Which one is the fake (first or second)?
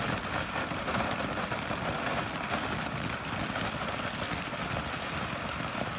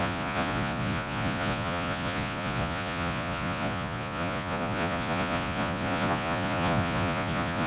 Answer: second